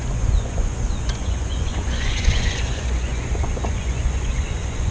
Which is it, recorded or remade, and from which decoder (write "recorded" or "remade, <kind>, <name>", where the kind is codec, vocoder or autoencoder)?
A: remade, vocoder, Vocos